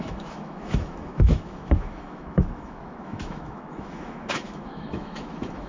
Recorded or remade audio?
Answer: remade